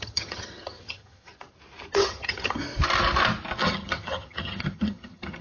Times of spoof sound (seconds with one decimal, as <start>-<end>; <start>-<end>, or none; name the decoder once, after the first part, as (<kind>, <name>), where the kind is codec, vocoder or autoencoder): 0.0-1.3 (vocoder, HiFi-GAN); 2.0-2.6; 3.6-5.4